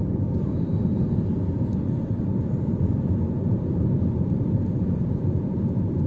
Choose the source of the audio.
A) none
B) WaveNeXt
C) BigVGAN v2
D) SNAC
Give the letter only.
C